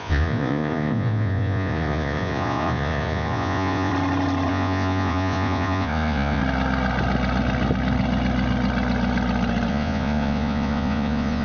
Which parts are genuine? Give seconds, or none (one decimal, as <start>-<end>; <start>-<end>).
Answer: 3.9-4.5; 6.4-9.7